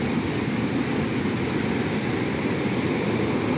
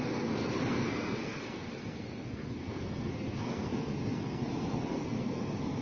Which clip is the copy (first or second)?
second